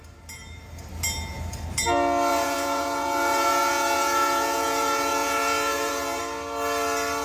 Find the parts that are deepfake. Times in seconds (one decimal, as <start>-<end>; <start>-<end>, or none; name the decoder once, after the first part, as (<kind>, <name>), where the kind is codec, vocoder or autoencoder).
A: 2.3-6.2 (vocoder, Vocos)